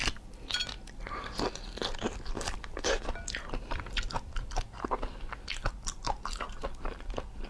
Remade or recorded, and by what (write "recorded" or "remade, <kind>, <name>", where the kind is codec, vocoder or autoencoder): recorded